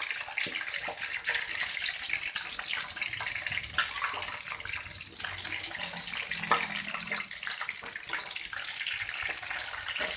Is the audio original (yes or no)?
yes